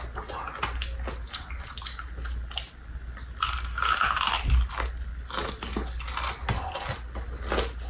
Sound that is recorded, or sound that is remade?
recorded